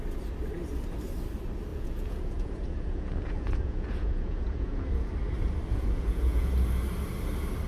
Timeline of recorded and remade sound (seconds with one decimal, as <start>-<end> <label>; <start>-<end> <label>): 0.0-1.7 recorded; 1.7-5.1 remade; 5.1-5.7 recorded; 5.7-6.5 remade; 6.5-7.7 recorded

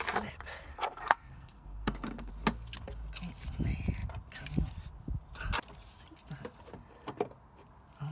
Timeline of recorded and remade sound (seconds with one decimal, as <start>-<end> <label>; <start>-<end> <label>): 0.0-0.7 recorded; 0.7-2.3 remade; 2.3-8.1 recorded

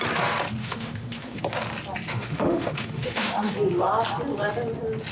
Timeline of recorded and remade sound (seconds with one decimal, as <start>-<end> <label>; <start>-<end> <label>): 0.0-0.6 recorded; 0.6-1.4 remade; 1.4-2.1 recorded; 2.1-3.5 remade; 3.5-5.1 recorded

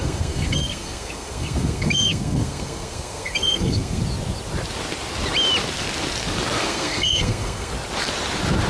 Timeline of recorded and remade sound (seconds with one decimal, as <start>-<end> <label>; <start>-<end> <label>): 0.0-4.0 remade; 4.0-6.6 recorded; 6.6-7.7 remade; 7.7-8.7 recorded

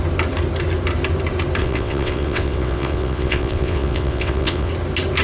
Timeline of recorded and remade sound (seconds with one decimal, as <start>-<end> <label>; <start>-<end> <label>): 0.0-1.6 recorded; 1.6-4.7 remade; 4.7-5.2 recorded

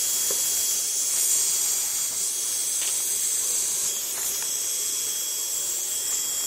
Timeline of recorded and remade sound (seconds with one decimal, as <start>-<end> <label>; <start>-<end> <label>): 0.0-6.5 recorded

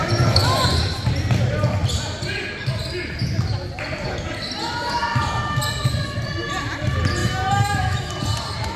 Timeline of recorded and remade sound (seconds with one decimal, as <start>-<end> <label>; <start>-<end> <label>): 0.0-7.2 recorded; 7.2-8.1 remade; 8.1-8.8 recorded